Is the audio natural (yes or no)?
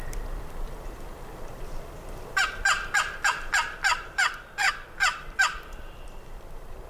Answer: no